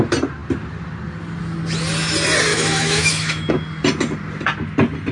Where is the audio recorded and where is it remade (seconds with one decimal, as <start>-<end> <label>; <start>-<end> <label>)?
0.0-2.5 recorded; 2.5-3.5 remade; 3.5-5.1 recorded